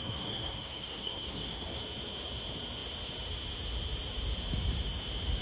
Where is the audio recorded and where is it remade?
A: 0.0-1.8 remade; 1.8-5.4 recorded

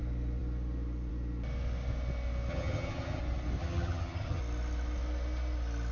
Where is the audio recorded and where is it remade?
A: 0.0-2.5 recorded; 2.5-3.2 remade; 3.2-3.6 recorded; 3.6-4.4 remade; 4.4-5.9 recorded

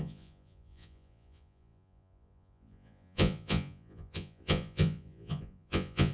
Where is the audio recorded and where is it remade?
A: 0.0-6.1 remade

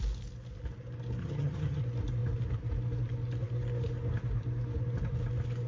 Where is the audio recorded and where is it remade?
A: 0.0-1.2 recorded; 1.2-1.8 remade; 1.8-5.7 recorded

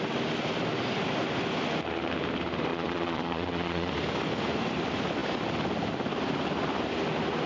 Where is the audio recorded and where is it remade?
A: 0.0-2.7 recorded; 2.7-3.9 remade; 3.9-7.5 recorded

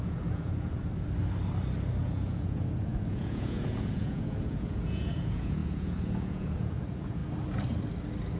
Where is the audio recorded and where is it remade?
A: 0.0-0.8 remade; 0.8-2.0 recorded; 2.0-7.2 remade; 7.2-8.4 recorded

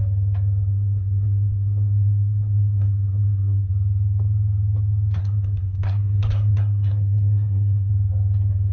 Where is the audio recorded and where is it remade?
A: 0.0-0.7 recorded; 0.7-3.7 remade; 3.7-5.2 recorded; 5.2-7.9 remade; 7.9-8.7 recorded